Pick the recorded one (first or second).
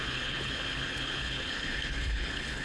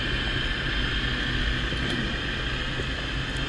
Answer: second